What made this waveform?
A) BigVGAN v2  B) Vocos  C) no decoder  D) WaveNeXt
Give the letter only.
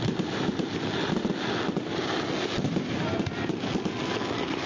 C